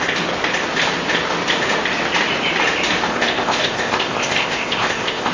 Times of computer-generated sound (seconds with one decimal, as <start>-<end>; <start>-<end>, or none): 3.1-5.3